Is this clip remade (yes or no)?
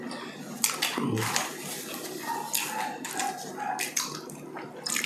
no